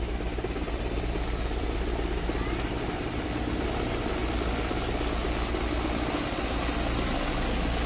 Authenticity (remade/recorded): recorded